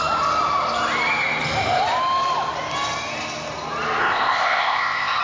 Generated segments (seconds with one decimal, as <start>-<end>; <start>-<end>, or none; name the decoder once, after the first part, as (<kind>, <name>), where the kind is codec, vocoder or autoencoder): 4.0-5.2 (codec, ZipCodec)